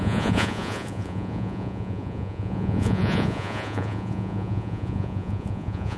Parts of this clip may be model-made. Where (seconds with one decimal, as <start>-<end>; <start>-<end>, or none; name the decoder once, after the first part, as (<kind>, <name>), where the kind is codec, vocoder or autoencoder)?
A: 0.0-6.0 (vocoder, Vocos)